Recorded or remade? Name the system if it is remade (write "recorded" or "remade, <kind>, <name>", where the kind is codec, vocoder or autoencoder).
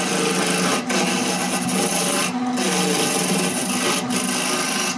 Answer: recorded